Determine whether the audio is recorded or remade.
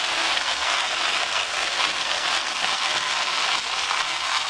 remade